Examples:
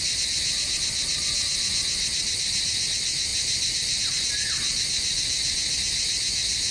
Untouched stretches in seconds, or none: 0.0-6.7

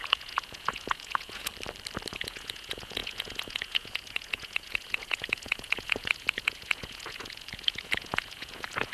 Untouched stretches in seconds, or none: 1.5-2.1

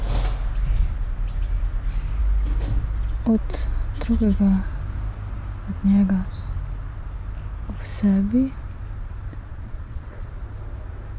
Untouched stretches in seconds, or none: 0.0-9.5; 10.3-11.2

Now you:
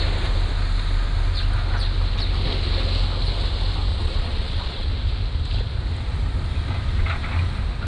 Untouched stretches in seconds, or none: 0.0-3.9; 4.9-7.9